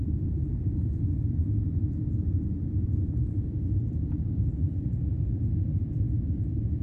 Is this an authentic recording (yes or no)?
no